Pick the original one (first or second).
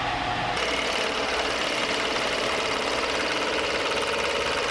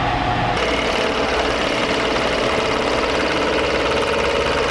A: second